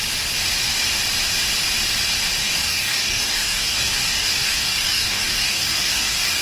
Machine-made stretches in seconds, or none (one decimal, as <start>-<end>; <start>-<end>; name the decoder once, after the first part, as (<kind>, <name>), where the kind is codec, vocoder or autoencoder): 2.4-6.4 (codec, DAC)